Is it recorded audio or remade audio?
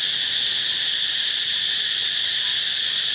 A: recorded